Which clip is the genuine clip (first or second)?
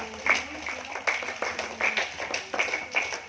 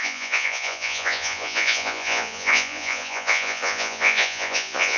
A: first